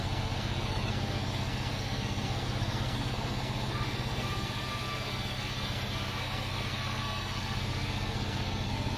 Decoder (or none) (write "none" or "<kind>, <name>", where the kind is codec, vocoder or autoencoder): codec, SNAC